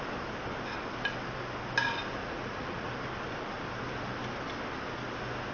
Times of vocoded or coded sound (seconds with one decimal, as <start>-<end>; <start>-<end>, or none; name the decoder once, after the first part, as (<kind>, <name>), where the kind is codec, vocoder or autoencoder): 2.2-2.9 (vocoder, Vocos)